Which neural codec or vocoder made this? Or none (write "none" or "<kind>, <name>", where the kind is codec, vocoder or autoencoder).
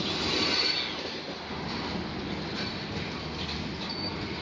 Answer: none